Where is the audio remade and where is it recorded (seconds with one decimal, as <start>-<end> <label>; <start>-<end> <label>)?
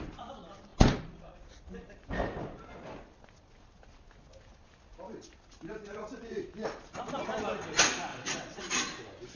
0.0-8.1 recorded; 8.1-8.6 remade; 8.6-9.4 recorded